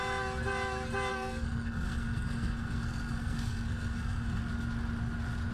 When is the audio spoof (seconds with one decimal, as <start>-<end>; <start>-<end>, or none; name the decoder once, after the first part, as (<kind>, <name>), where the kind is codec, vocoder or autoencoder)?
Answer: 1.1-4.4 (codec, SNAC)